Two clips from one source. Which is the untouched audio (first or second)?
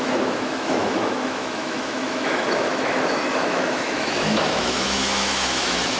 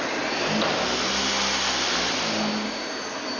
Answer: second